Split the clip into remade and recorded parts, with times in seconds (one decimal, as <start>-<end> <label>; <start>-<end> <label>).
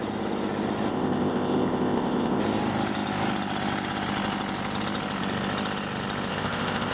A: 0.0-0.9 recorded; 0.9-2.4 remade; 2.4-6.3 recorded; 6.3-6.9 remade